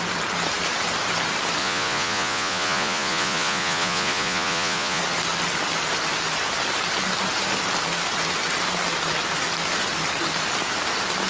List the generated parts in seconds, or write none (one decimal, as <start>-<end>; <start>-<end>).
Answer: 1.6-5.0

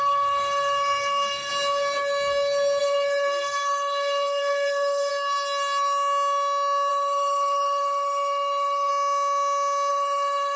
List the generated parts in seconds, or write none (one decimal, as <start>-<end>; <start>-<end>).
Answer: 0.0-1.5; 2.8-5.1; 6.9-8.9; 9.9-10.6

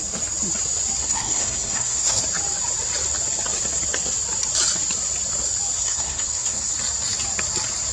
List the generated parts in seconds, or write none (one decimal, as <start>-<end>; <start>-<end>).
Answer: 1.0-2.2; 5.8-6.7

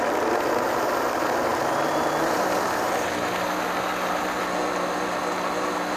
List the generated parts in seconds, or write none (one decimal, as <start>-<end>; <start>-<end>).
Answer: none

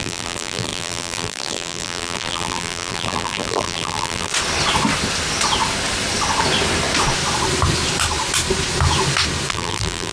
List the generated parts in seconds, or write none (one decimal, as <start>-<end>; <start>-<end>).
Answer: 0.0-4.3; 9.5-10.1